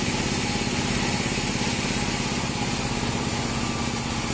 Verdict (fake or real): real